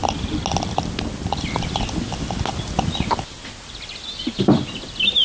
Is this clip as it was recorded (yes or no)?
yes